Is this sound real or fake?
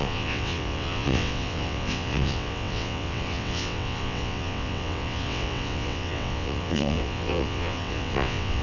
fake